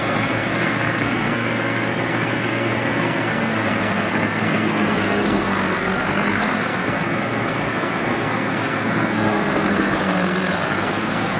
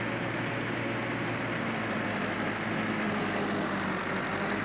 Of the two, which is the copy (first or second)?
first